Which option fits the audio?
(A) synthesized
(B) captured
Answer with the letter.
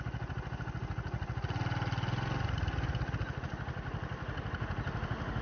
B